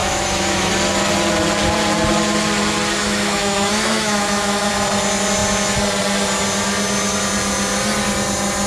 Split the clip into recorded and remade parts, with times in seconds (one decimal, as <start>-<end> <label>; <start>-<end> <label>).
0.0-0.7 remade; 0.7-3.0 recorded; 3.0-4.7 remade; 4.7-8.7 recorded